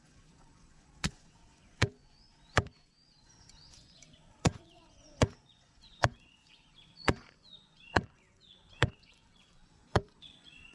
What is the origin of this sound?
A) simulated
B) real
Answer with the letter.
A